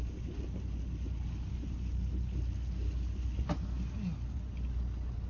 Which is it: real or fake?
real